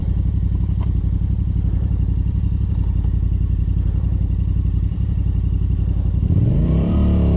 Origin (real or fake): fake